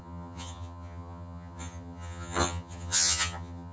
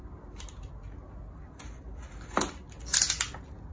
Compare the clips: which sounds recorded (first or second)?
second